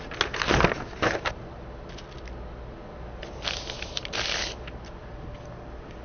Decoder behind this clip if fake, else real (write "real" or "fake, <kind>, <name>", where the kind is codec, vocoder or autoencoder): real